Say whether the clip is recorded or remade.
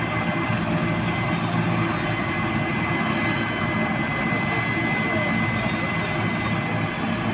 recorded